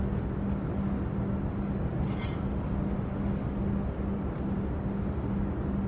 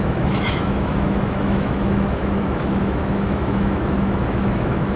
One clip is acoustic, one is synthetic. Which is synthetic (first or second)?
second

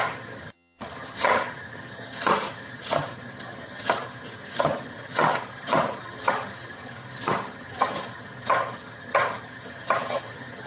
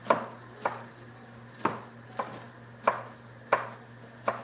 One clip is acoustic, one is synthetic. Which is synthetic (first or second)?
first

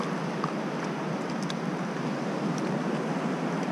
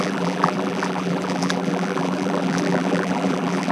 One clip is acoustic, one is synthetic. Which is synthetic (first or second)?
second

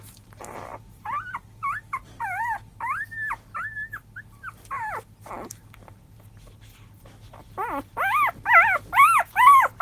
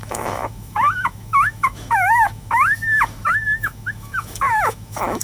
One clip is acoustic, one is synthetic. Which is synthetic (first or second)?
second